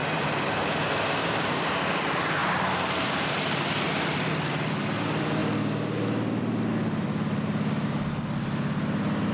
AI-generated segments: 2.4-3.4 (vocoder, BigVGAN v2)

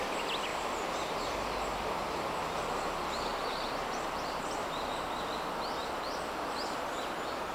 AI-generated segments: 0.5-1.1 (vocoder, BigVGAN v2); 3.3-5.3; 5.8-6.8

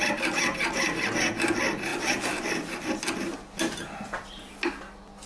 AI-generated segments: none

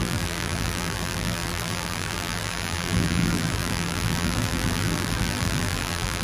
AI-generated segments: 0.0-6.2 (vocoder, BigVGAN v2)

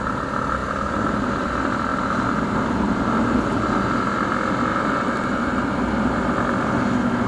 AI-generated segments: 0.6-1.3 (vocoder, BigVGAN v2); 1.9-3.0; 4.7-5.7